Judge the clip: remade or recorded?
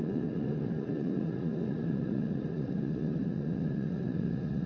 remade